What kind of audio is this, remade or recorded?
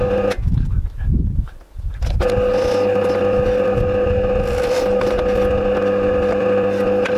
recorded